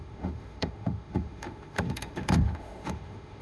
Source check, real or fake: fake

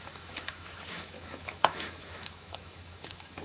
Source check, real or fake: fake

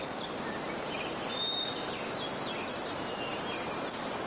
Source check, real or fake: real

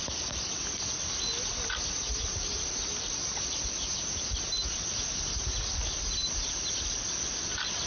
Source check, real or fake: real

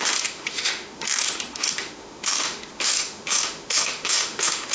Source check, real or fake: fake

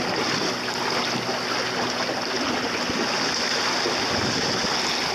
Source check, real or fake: real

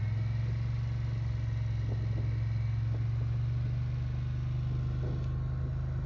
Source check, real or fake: real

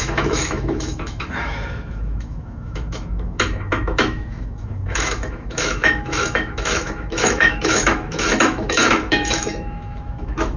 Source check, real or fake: fake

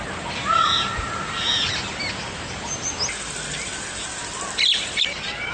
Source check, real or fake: real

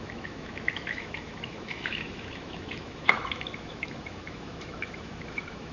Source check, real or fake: fake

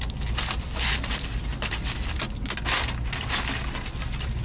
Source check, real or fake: real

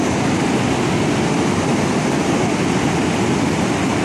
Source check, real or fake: real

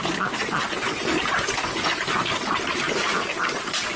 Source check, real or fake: real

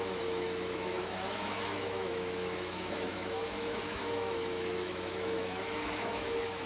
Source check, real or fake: fake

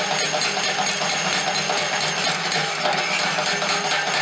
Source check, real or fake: real